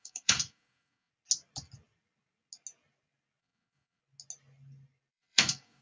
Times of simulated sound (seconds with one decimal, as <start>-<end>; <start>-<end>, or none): 0.0-1.1; 3.4-4.0; 5.1-5.8